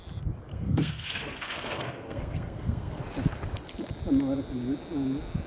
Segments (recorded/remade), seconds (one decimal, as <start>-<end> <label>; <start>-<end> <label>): 0.0-0.5 recorded; 0.5-3.0 remade; 3.0-5.5 recorded